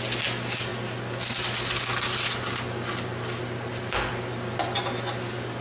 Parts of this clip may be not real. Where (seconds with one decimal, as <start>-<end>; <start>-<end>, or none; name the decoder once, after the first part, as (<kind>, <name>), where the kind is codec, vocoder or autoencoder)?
none